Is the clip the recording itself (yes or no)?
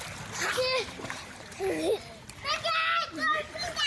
yes